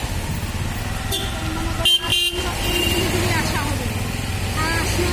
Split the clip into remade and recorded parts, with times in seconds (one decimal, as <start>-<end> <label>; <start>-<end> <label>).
0.0-2.1 recorded; 2.1-2.9 remade; 2.9-5.1 recorded